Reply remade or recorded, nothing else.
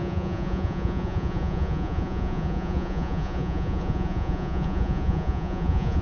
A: remade